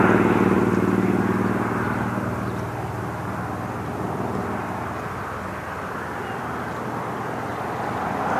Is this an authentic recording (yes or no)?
yes